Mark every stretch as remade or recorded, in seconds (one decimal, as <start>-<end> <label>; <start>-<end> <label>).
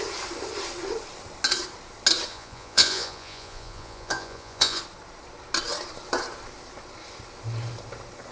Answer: 0.0-2.3 recorded; 2.3-4.8 remade; 4.8-8.3 recorded